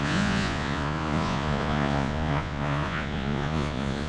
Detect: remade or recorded remade